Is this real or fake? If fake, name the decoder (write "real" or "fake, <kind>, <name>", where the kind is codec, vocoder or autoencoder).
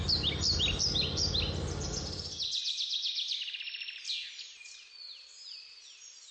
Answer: real